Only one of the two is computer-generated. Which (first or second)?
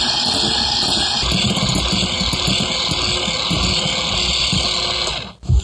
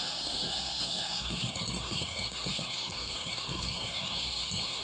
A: second